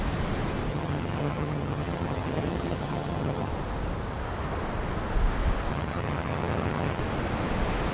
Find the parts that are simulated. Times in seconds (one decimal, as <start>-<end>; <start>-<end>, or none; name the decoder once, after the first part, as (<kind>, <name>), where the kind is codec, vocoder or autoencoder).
0.7-3.5 (vocoder, HiFi-GAN); 5.7-7.0